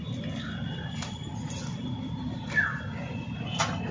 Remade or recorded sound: recorded